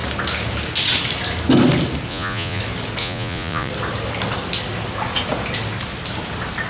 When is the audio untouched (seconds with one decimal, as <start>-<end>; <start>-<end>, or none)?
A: 0.0-2.1; 2.6-3.0; 3.7-6.7

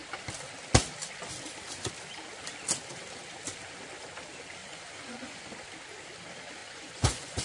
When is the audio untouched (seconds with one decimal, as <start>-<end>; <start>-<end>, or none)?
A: 0.0-4.6; 5.4-6.6